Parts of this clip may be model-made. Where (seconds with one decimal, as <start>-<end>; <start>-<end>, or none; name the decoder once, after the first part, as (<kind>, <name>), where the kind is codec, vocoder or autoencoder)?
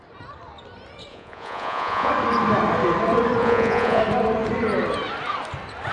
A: 1.1-2.1 (vocoder, Vocos); 3.4-4.0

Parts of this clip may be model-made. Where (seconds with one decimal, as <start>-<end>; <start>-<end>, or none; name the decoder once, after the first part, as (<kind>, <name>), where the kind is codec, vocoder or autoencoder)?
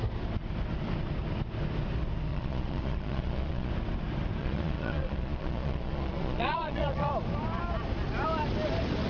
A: 2.3-3.7 (vocoder, Vocos); 4.4-7.1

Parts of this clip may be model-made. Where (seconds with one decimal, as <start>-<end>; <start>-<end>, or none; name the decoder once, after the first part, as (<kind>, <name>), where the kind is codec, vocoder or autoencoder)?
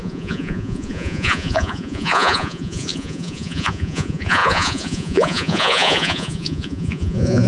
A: 0.0-7.5 (vocoder, Vocos)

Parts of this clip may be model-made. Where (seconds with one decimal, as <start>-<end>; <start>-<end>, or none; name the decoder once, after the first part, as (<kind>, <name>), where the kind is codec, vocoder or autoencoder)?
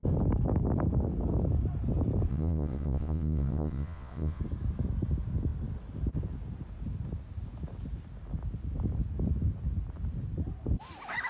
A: 2.3-4.4 (vocoder, Vocos)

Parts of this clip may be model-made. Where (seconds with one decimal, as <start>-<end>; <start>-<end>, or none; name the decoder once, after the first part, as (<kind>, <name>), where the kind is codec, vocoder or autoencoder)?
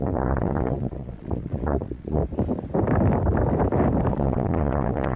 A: 0.0-2.2 (vocoder, Vocos); 4.1-5.2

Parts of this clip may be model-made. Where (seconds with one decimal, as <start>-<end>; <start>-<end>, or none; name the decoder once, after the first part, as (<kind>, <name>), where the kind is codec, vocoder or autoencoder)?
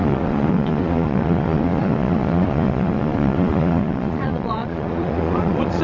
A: 0.0-5.8 (vocoder, Vocos)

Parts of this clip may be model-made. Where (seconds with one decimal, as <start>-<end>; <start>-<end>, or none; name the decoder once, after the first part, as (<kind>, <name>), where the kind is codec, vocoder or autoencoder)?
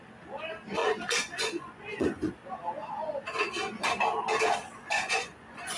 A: 0.8-2.3 (vocoder, Vocos); 4.8-5.8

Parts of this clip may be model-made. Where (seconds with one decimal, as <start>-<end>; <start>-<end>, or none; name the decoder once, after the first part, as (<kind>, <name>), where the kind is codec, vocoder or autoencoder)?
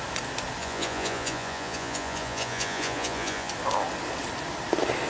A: 0.6-3.5 (vocoder, Vocos)